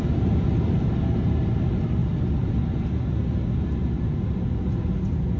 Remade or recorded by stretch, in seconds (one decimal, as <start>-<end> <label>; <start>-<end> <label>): 0.0-5.4 recorded